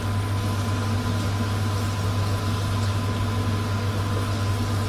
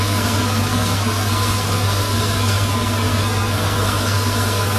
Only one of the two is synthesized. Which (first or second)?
second